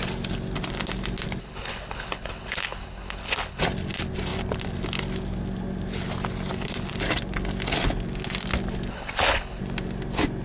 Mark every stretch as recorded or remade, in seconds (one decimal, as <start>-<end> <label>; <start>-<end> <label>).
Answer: 0.0-1.4 recorded; 1.4-3.6 remade; 3.6-8.9 recorded; 8.9-9.6 remade; 9.6-10.4 recorded